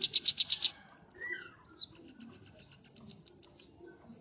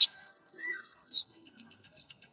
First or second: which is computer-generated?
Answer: second